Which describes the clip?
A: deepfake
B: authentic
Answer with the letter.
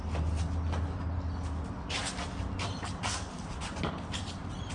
B